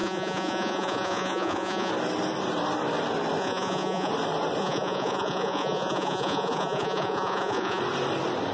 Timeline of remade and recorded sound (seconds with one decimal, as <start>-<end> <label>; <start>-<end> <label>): 0.0-1.9 remade; 1.9-3.4 recorded; 3.4-4.1 remade; 4.1-4.6 recorded; 4.6-7.8 remade; 7.8-8.5 recorded